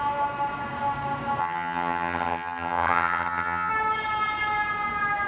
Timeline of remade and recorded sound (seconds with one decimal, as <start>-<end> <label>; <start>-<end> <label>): 0.0-1.4 recorded; 1.4-3.7 remade; 3.7-5.3 recorded